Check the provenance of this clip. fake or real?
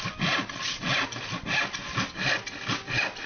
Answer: real